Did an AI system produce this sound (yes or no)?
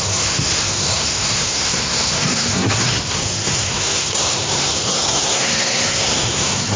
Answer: yes